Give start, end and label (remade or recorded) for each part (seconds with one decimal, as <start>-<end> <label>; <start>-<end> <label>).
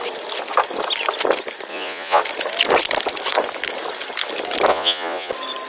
0.0-1.7 recorded; 1.7-2.2 remade; 2.2-4.7 recorded; 4.7-5.3 remade; 5.3-5.7 recorded